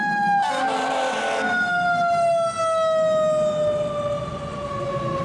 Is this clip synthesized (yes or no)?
no